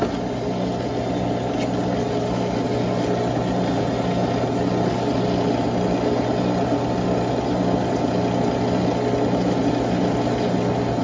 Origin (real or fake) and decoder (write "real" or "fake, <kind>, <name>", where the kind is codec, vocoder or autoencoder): real